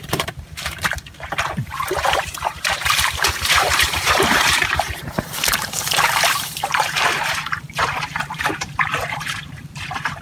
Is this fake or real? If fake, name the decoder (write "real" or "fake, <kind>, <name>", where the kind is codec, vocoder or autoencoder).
fake, vocoder, BigVGAN v2